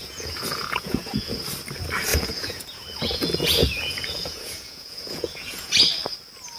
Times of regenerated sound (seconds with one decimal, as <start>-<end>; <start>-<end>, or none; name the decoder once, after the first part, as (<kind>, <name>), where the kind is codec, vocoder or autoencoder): 0.0-1.4 (vocoder, Vocos); 2.1-5.7